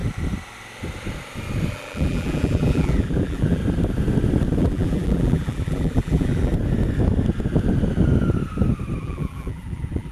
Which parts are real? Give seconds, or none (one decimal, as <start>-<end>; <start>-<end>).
0.0-1.7; 3.6-4.6; 6.5-9.0